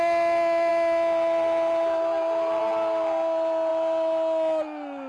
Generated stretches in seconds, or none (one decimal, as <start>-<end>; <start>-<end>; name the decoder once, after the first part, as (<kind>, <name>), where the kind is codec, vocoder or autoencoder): none

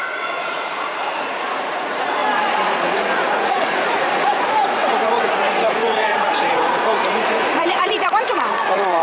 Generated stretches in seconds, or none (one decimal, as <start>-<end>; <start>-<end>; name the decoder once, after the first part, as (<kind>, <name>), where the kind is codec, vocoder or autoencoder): 0.0-2.2 (vocoder, Vocos); 2.7-9.0

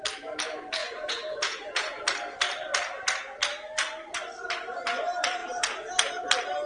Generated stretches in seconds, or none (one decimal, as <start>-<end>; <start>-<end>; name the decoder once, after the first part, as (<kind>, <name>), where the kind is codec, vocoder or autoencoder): 0.8-2.0 (vocoder, Vocos); 5.4-6.1